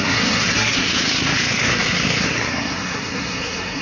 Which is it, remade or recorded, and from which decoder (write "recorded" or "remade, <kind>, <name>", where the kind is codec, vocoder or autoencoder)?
remade, codec, SNAC